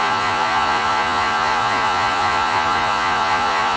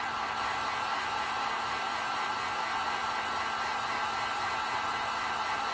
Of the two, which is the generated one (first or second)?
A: first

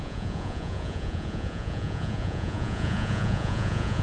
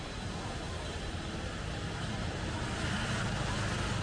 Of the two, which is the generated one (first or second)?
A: first